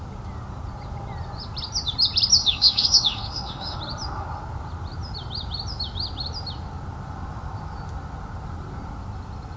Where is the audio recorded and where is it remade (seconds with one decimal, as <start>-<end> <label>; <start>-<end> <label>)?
0.0-2.4 recorded; 2.4-3.8 remade; 3.8-9.6 recorded